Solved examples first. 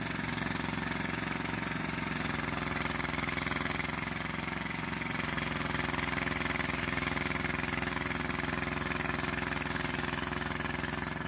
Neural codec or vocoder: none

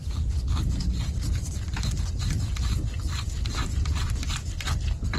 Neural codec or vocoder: none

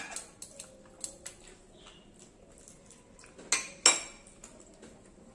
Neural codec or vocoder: none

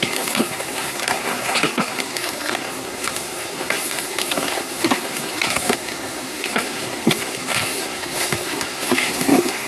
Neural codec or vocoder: codec, SNAC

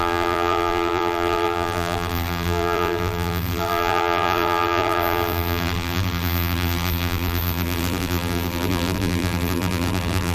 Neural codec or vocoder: vocoder, BigVGAN v2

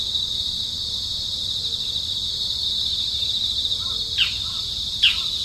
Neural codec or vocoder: none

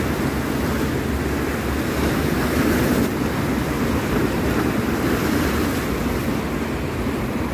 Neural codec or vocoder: none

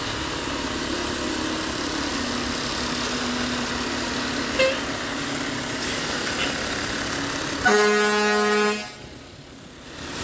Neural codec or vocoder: none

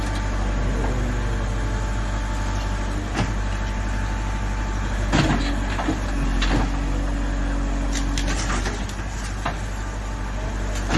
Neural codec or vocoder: none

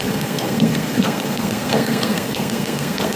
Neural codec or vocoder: codec, SNAC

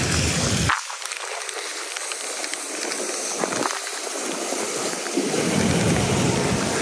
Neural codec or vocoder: none